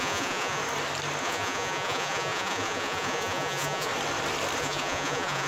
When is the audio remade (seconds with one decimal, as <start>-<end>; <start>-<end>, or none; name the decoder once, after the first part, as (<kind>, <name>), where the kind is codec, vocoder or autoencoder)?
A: 0.0-0.6 (vocoder, Vocos); 1.2-3.9; 4.6-5.5